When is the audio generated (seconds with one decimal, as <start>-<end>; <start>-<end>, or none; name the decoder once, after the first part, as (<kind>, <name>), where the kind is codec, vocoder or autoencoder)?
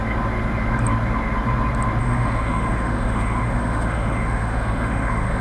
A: 2.0-5.4 (autoencoder, DAC-VAE)